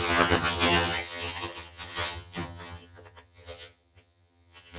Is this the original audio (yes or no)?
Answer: no